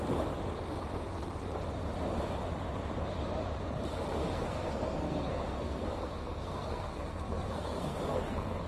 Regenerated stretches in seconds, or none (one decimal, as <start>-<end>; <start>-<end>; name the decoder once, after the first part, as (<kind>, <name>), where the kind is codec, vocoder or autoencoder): 4.2-8.7 (codec, SNAC)